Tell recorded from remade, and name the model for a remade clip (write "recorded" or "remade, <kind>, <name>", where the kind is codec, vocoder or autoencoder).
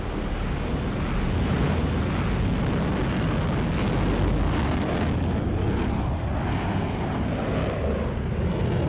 recorded